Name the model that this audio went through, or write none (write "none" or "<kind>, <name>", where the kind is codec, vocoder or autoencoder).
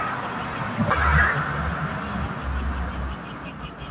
none